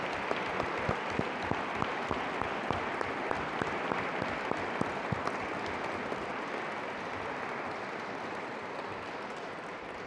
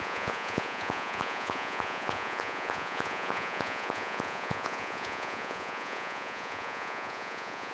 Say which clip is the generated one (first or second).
second